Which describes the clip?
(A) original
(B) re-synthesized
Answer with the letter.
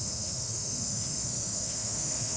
B